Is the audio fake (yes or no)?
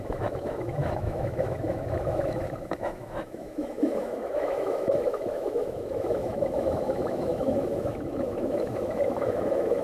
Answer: yes